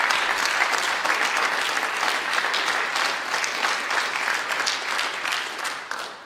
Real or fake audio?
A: real